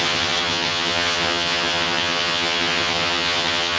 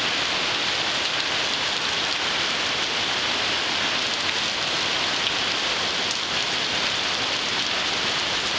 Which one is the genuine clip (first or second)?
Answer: second